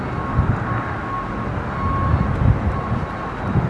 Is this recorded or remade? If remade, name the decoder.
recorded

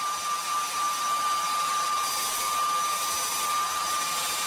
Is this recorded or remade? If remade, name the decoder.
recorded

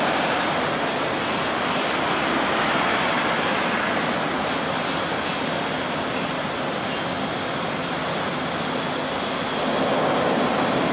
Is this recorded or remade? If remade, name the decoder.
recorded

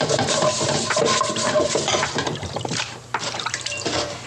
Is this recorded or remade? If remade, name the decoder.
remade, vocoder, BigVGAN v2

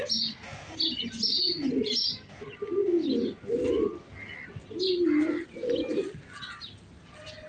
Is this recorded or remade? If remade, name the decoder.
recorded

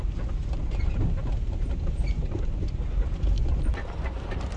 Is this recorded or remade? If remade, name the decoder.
recorded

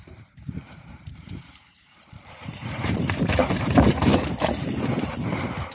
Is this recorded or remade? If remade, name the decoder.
remade, vocoder, BigVGAN v2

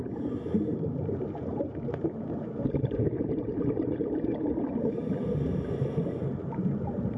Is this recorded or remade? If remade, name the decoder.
remade, vocoder, BigVGAN v2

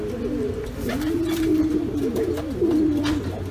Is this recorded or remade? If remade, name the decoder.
remade, vocoder, BigVGAN v2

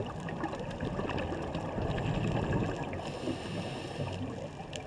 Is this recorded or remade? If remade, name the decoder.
recorded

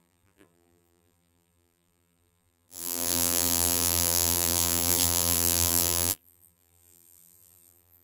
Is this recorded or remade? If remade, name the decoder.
remade, vocoder, BigVGAN v2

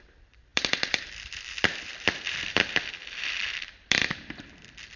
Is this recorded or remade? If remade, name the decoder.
remade, vocoder, BigVGAN v2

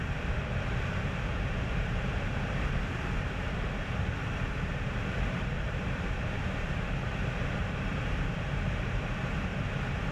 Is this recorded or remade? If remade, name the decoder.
remade, vocoder, BigVGAN v2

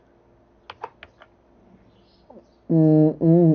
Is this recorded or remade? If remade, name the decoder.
recorded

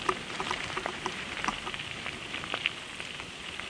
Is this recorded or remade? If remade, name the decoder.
remade, vocoder, BigVGAN v2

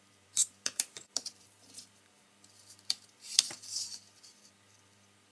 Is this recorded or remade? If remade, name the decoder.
remade, vocoder, BigVGAN v2